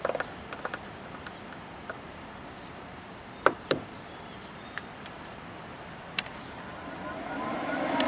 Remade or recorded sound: remade